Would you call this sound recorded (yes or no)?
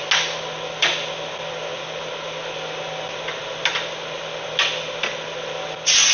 yes